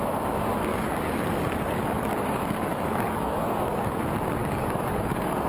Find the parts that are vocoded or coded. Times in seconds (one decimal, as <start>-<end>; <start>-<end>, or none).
0.7-4.0; 4.4-5.5